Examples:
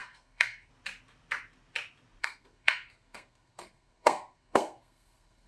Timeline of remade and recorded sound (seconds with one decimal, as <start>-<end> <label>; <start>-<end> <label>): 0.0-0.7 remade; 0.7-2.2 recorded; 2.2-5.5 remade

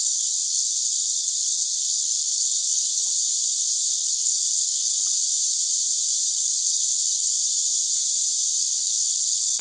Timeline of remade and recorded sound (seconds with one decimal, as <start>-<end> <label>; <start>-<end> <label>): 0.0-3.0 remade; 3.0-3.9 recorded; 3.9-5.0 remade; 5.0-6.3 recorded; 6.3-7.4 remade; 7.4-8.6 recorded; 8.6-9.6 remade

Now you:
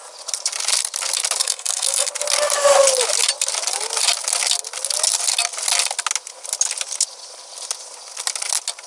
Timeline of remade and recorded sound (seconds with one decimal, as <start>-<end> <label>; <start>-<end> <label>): 0.0-1.4 recorded; 1.4-2.1 remade; 2.1-8.9 recorded

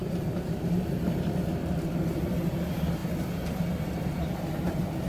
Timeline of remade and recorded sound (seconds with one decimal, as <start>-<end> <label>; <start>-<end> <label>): 0.0-1.0 remade; 1.0-5.1 recorded

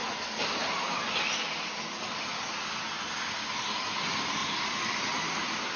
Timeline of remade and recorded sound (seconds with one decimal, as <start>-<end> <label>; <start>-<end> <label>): 0.0-5.8 recorded

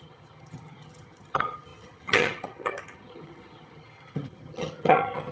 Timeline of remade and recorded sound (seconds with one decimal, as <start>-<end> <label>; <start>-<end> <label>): 0.0-5.3 remade

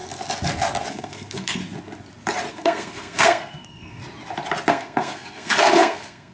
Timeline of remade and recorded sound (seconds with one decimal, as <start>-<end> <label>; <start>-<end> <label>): 0.0-0.9 recorded; 0.9-1.6 remade; 1.6-2.5 recorded; 2.5-4.0 remade; 4.0-4.7 recorded; 4.7-6.3 remade